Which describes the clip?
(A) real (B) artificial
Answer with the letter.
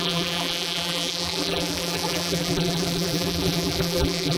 B